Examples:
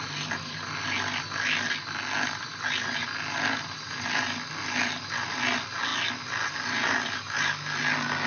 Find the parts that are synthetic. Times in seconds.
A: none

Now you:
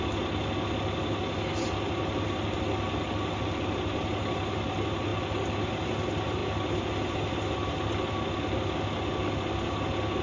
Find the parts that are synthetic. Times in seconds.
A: none

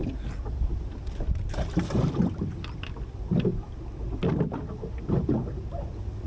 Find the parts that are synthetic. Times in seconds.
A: none

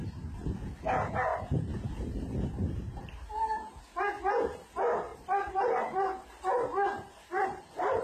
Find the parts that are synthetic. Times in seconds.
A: 1.3-3.8 (vocoder, BigVGAN v2); 5.1-8.0